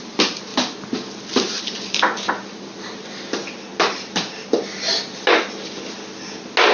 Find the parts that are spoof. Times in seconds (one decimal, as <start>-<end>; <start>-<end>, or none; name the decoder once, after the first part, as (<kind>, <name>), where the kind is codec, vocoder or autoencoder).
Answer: none